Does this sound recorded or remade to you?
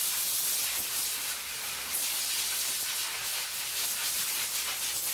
recorded